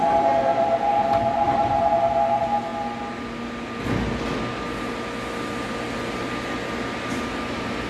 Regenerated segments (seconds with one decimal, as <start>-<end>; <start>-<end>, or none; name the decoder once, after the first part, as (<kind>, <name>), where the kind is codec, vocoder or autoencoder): none